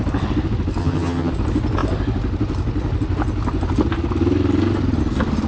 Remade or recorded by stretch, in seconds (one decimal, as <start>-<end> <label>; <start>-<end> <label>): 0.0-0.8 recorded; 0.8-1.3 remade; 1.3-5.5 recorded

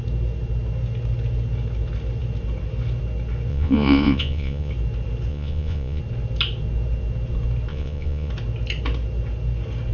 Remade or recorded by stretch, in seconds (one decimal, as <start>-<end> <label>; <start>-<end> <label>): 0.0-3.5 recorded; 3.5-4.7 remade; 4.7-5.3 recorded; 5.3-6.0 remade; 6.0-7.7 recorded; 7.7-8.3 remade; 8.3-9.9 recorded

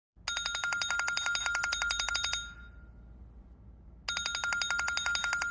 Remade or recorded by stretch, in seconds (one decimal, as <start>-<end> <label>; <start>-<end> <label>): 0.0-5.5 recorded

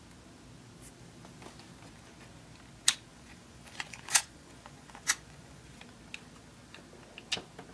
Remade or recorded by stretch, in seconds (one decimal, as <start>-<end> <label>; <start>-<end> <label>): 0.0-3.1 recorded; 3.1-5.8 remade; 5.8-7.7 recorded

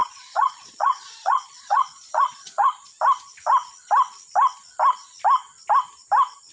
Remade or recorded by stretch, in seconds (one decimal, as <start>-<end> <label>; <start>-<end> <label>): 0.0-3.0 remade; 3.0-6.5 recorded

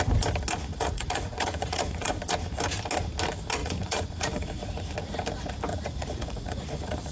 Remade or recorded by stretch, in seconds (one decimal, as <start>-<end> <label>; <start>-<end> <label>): 0.0-0.7 recorded; 0.7-2.2 remade; 2.2-3.6 recorded; 3.6-4.9 remade; 4.9-5.7 recorded; 5.7-7.1 remade